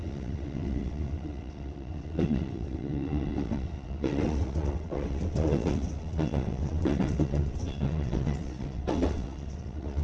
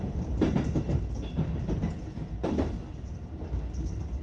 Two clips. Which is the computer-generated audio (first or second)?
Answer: first